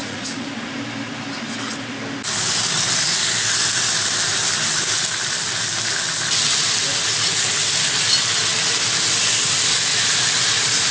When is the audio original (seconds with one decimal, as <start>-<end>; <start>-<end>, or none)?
0.5-10.9